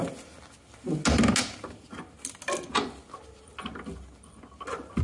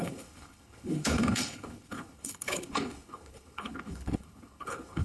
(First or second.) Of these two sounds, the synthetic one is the second